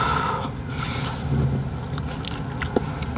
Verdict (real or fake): real